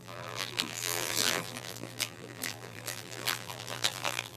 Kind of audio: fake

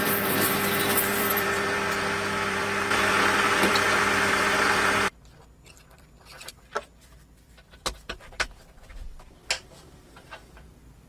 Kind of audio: fake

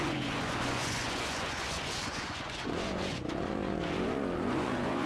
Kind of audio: fake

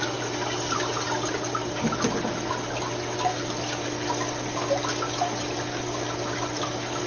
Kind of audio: real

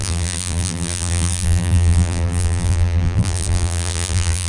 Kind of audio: fake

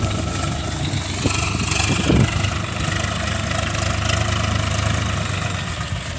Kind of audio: real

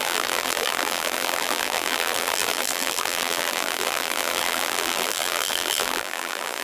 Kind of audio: fake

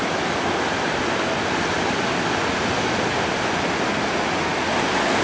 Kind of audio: real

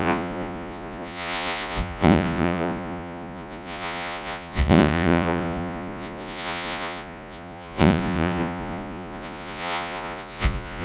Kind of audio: fake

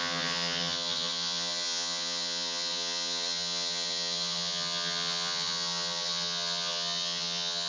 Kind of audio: fake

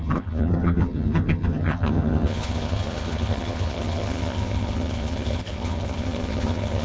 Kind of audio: fake